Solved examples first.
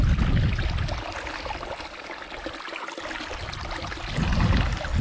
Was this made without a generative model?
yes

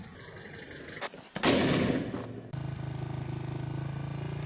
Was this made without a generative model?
yes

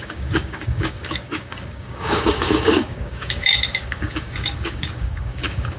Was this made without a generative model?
no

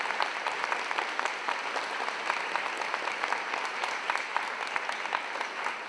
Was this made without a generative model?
yes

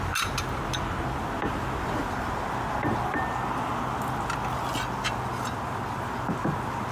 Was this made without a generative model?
yes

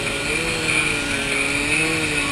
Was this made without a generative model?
yes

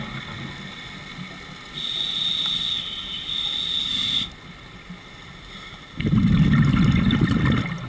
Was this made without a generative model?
yes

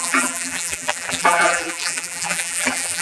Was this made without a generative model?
no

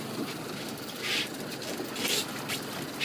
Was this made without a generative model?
no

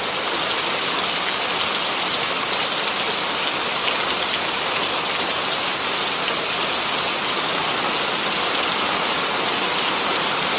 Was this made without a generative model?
yes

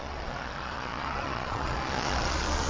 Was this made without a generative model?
no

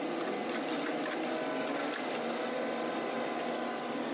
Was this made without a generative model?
yes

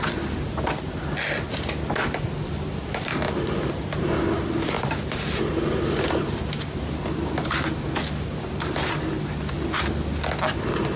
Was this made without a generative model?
yes